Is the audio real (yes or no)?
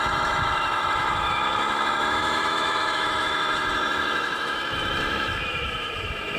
no